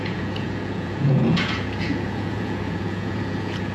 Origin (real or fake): fake